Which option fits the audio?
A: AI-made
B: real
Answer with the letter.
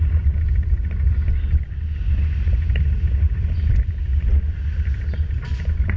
B